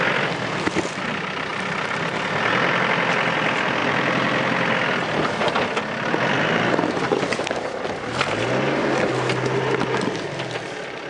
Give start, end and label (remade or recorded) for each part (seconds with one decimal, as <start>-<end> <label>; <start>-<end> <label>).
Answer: 0.0-1.5 recorded; 1.5-2.4 remade; 2.4-3.8 recorded; 3.8-7.3 remade; 7.3-11.1 recorded